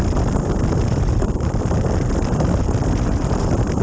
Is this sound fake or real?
real